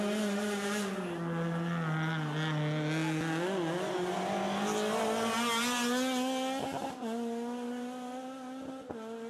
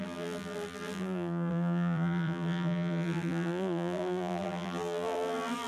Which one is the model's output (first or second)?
second